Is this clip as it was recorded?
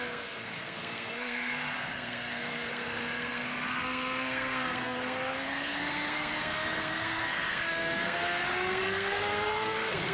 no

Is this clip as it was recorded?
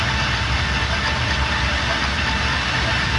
yes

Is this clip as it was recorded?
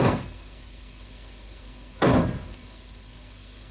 no